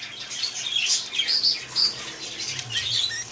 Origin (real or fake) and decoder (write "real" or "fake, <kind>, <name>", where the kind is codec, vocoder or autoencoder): real